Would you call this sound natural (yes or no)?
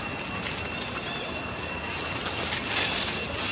yes